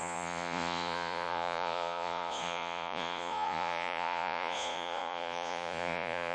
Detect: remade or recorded remade